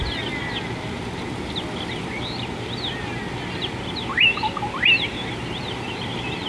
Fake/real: real